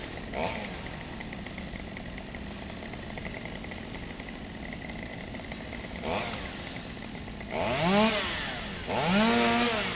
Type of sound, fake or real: real